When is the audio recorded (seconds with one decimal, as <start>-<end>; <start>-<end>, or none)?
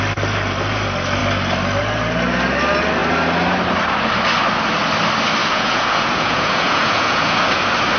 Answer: 0.0-5.4; 7.6-8.0